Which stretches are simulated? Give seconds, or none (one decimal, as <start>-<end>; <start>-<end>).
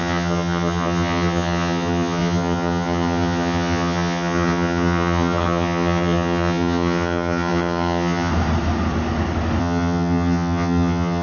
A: 0.0-8.3; 9.6-11.2